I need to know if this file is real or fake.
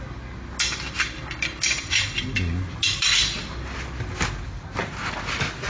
real